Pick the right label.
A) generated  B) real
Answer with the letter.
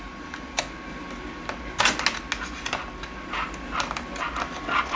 B